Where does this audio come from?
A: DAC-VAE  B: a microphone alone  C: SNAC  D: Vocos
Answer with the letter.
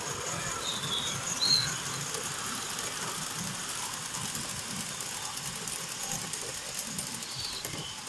B